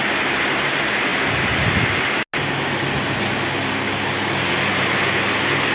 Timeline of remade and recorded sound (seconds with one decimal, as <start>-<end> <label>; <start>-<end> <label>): 0.0-5.7 recorded